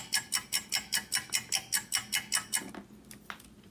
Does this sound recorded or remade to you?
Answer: recorded